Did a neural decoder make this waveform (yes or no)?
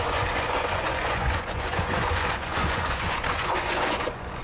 yes